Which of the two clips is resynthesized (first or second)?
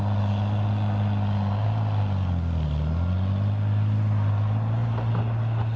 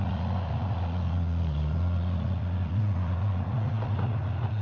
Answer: second